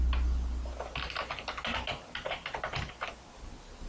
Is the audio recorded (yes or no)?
yes